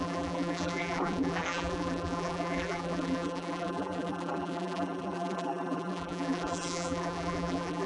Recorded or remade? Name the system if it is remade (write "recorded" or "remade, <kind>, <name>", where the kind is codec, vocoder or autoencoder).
remade, vocoder, BigVGAN v2